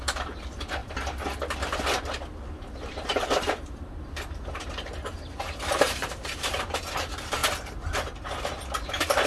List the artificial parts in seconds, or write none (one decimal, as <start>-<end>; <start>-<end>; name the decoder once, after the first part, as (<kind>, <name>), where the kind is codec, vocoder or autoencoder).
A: 0.0-0.8 (vocoder, BigVGAN v2); 2.8-7.4; 8.9-9.3